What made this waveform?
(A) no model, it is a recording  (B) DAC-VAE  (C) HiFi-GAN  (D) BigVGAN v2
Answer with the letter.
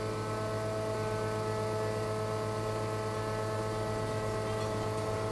A